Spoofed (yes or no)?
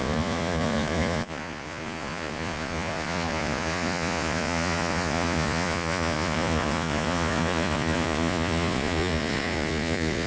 yes